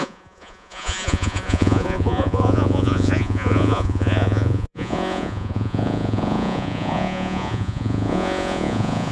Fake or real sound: fake